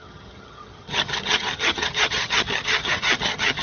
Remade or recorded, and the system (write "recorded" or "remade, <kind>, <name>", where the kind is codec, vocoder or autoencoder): remade, vocoder, HiFi-GAN